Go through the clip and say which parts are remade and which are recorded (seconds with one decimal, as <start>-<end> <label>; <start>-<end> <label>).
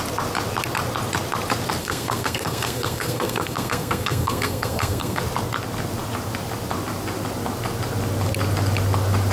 0.0-1.8 recorded; 1.8-5.2 remade; 5.2-9.3 recorded